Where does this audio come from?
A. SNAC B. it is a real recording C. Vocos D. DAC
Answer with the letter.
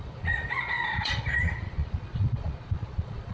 C